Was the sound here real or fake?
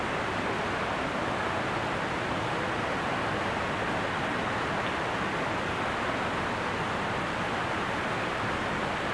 real